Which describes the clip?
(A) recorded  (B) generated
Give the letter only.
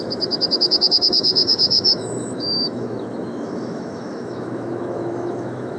B